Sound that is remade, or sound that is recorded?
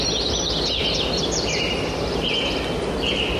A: recorded